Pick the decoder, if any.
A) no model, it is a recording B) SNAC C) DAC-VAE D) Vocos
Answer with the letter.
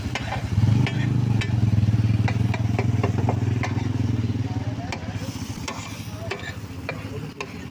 A